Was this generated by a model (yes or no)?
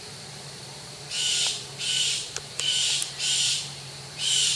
yes